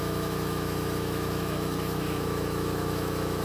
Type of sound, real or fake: fake